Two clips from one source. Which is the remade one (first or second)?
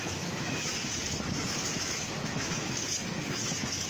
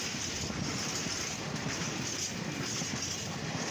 first